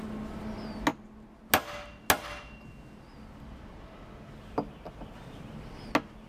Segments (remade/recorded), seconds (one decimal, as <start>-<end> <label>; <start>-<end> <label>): 0.0-6.3 recorded